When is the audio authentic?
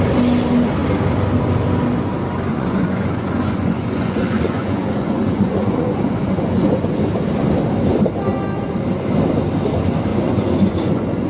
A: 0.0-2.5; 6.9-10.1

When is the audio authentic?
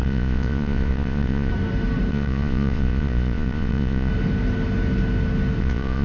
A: 1.5-2.1; 4.1-5.6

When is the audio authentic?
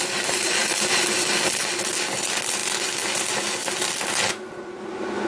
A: 0.0-5.3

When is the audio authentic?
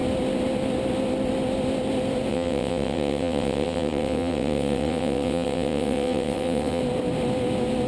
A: 0.0-2.3; 6.8-7.9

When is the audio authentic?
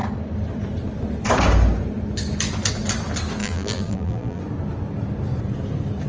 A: 0.0-3.4; 4.4-6.1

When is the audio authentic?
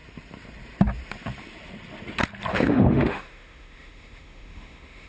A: 0.0-2.5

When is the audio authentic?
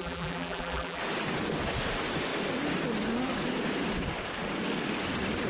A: 1.0-5.5